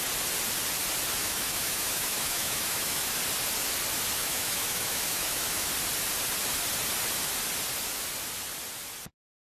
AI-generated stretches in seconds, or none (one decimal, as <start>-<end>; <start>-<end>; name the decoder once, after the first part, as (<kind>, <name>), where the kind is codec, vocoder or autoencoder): 1.2-3.1 (autoencoder, DAC-VAE); 4.2-5.7